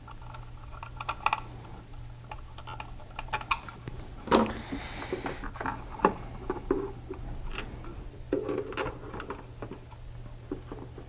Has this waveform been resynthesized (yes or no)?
no